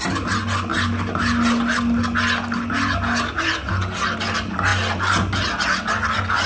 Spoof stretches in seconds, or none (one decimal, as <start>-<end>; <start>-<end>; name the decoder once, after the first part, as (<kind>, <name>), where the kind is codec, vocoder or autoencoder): none